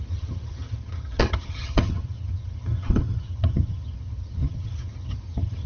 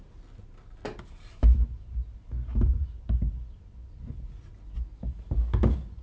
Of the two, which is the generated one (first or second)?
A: first